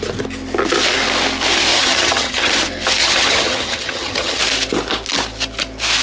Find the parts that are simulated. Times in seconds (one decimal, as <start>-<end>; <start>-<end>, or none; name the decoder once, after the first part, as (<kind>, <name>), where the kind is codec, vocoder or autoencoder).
1.7-2.5 (vocoder, HiFi-GAN); 3.0-4.4